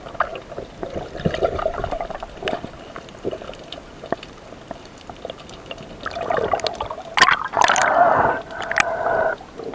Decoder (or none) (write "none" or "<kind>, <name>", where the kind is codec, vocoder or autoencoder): none